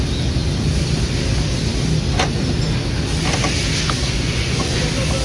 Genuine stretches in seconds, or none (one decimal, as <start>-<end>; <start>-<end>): 0.0-4.0; 4.8-5.2